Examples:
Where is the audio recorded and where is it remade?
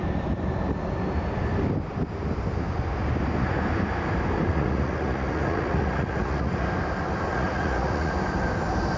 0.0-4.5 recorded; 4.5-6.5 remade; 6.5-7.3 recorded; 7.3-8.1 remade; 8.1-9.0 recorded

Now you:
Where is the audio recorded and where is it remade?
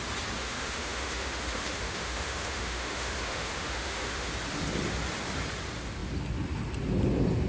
0.0-0.4 recorded; 0.4-4.3 remade; 4.3-7.5 recorded